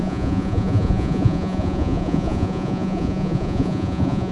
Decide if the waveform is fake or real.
fake